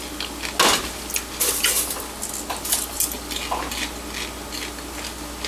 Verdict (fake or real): real